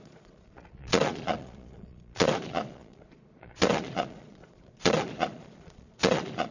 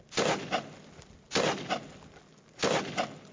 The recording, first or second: second